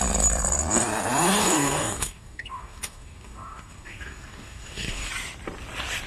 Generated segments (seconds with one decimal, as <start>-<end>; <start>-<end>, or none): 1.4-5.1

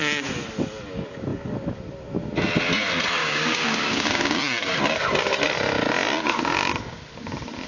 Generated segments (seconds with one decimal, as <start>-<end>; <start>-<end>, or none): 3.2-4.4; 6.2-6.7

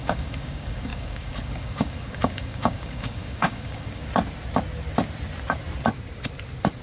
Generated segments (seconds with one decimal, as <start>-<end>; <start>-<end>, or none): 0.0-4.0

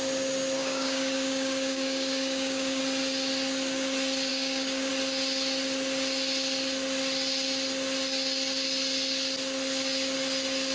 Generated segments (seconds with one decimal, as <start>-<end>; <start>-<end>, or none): 0.6-2.8; 4.3-4.9